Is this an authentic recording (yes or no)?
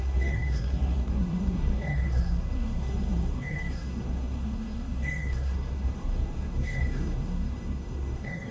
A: no